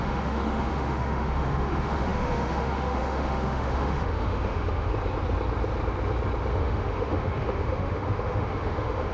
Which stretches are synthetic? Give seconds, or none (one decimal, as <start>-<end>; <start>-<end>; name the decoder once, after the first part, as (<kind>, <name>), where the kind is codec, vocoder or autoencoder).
0.0-4.9 (autoencoder, DAC-VAE); 6.5-9.1